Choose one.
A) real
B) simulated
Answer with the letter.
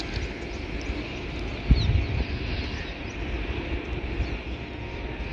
A